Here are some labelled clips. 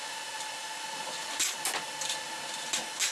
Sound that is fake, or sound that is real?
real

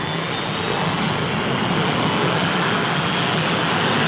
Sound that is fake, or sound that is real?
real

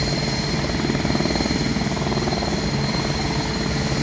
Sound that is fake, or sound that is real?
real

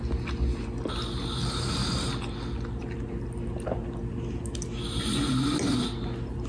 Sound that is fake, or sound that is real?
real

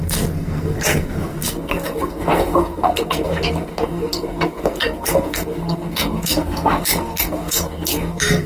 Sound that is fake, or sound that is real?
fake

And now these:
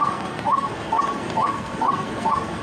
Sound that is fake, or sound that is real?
fake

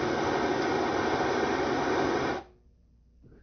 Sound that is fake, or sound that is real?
real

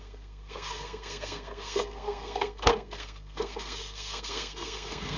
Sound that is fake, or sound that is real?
fake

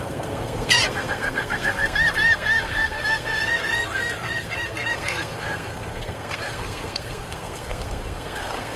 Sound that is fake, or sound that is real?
fake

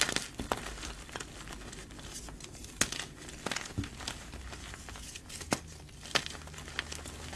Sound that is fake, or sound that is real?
real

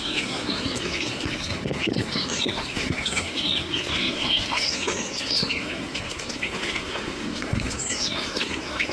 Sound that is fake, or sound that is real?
fake